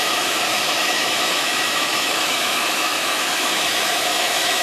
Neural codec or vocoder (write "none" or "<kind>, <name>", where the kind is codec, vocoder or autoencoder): autoencoder, DAC-VAE